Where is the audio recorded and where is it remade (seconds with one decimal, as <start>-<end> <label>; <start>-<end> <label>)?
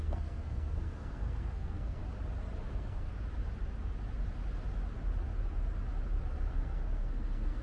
0.0-2.0 remade; 2.0-2.7 recorded; 2.7-3.1 remade; 3.1-6.5 recorded; 6.5-7.6 remade